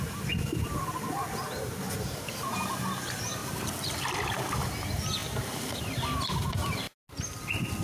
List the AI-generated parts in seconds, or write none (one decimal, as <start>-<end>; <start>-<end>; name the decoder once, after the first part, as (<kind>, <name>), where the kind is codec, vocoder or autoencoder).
3.4-4.4 (vocoder, BigVGAN v2); 5.2-6.8